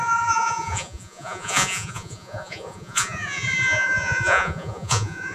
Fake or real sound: fake